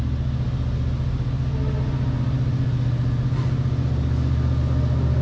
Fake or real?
real